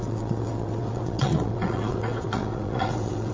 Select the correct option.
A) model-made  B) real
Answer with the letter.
A